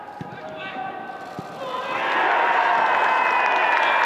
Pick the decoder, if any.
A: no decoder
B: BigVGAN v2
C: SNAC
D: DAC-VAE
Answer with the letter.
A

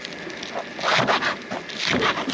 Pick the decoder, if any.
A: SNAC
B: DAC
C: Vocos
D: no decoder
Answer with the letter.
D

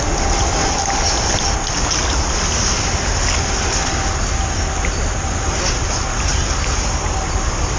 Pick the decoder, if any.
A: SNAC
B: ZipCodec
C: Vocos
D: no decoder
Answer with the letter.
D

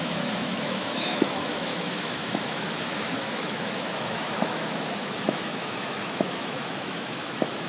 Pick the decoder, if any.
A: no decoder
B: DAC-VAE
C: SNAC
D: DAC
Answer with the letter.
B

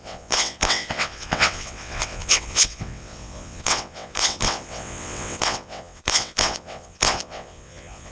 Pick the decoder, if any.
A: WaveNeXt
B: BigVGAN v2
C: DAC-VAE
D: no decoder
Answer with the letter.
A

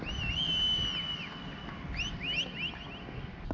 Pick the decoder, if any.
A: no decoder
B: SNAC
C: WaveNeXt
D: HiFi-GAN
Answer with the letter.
A